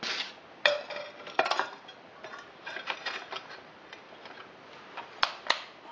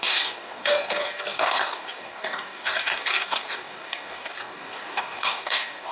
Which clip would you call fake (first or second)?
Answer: second